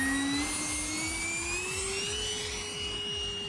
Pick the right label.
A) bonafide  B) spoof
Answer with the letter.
A